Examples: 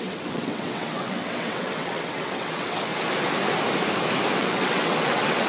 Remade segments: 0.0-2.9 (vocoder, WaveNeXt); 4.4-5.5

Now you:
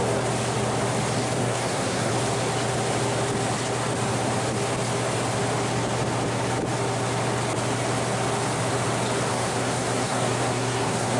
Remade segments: 1.4-2.1 (codec, SNAC); 9.3-11.2

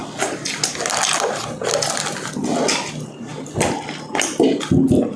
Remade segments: none

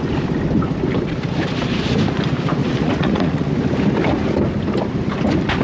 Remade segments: 2.6-3.5 (vocoder, Vocos)

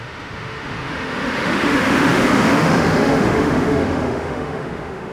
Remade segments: 0.0-5.1 (autoencoder, DAC-VAE)

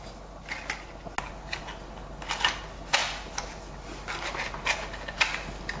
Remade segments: none

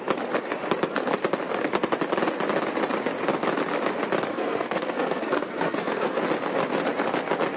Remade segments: 4.3-6.2 (codec, SNAC)

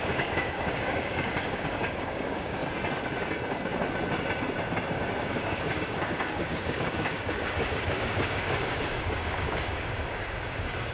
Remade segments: 0.0-2.6 (codec, DAC); 5.2-10.9